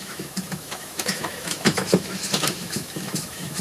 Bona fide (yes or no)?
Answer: no